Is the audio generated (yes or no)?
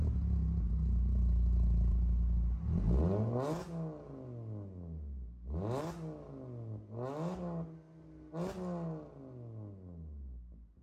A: no